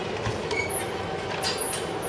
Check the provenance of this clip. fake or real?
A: real